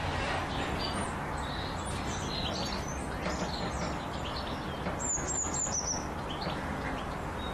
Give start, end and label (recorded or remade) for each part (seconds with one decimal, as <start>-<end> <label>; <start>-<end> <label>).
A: 0.0-7.5 recorded